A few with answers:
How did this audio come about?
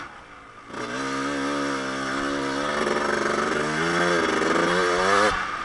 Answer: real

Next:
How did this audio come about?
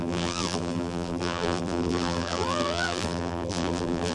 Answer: fake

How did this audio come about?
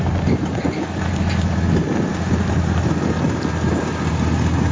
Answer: real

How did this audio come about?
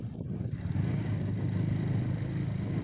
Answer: real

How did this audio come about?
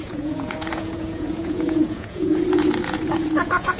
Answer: fake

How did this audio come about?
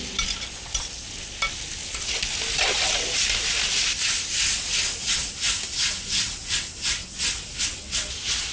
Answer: real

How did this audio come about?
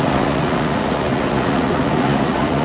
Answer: fake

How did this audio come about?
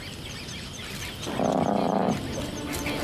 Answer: real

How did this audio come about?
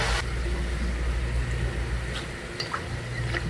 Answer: real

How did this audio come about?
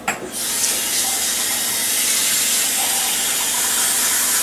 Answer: real